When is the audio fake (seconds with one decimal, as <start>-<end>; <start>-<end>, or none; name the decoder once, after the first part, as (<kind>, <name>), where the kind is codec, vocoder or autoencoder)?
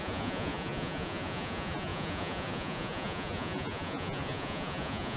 0.0-5.2 (vocoder, Vocos)